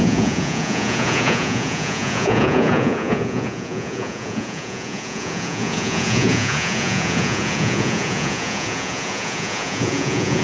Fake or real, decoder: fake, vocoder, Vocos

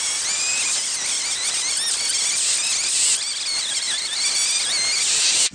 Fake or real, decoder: real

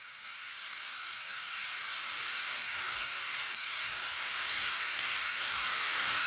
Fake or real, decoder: fake, codec, DAC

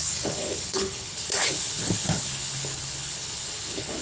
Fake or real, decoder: fake, codec, HILCodec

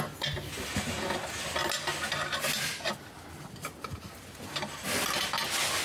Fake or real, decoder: real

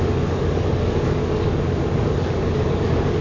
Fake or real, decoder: fake, codec, DAC